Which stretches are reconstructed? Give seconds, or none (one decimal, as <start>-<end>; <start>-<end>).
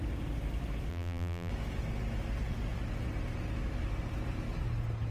0.9-1.5